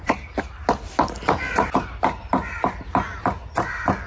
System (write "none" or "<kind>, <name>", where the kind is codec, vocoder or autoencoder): none